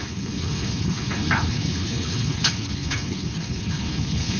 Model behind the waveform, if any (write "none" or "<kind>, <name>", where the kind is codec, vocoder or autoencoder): codec, HILCodec